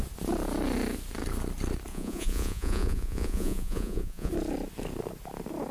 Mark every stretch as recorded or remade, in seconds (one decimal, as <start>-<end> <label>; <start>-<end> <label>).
0.0-1.9 recorded; 1.9-4.3 remade; 4.3-5.7 recorded